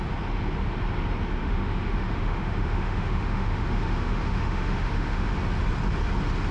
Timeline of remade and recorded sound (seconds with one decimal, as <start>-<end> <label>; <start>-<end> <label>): 0.0-1.4 recorded; 1.4-5.3 remade; 5.3-6.5 recorded

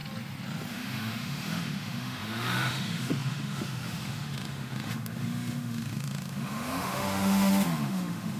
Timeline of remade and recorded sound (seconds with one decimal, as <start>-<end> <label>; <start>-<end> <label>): 0.0-0.7 recorded; 0.7-8.4 remade

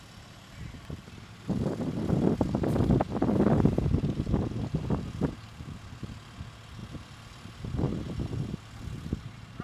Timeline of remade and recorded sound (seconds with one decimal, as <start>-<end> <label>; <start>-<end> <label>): 0.0-9.6 recorded

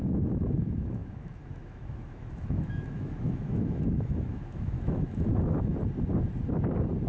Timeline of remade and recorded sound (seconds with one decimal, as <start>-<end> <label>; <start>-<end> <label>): 0.0-5.7 remade; 5.7-7.1 recorded

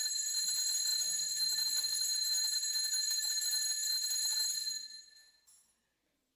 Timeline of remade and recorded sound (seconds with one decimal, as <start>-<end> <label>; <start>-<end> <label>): 0.0-6.4 recorded